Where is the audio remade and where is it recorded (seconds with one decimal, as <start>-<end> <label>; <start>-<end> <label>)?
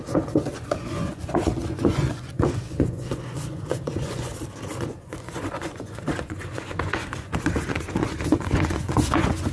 0.0-4.3 remade; 4.3-4.8 recorded; 4.8-9.5 remade